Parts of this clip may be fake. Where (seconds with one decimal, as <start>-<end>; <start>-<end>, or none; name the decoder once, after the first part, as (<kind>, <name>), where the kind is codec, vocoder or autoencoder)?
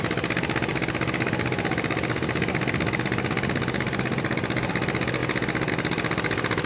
none